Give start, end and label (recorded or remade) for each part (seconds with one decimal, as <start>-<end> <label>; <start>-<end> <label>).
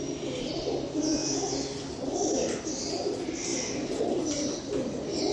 0.0-5.3 recorded